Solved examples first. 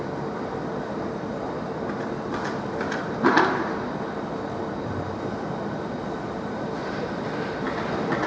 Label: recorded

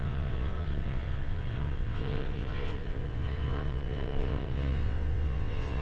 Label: remade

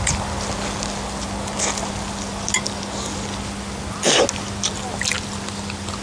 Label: recorded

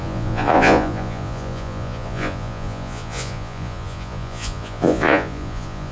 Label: remade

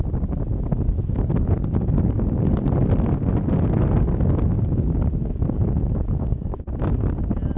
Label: recorded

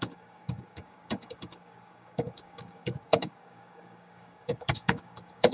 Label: remade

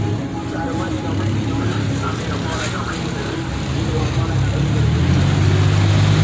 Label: recorded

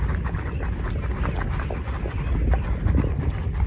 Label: recorded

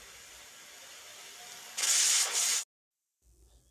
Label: recorded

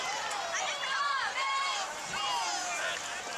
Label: recorded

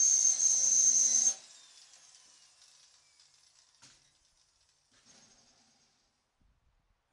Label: recorded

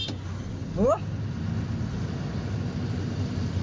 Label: recorded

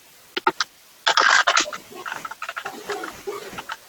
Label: recorded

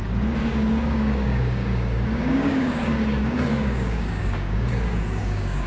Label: remade